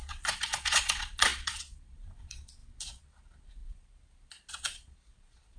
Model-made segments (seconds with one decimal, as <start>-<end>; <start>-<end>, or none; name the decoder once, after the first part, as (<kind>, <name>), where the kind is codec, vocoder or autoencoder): 0.0-5.6 (vocoder, Vocos)